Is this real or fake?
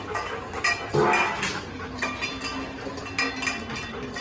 real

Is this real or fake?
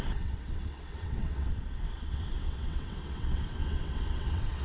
fake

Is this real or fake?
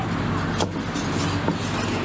real